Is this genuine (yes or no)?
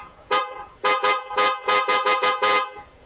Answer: no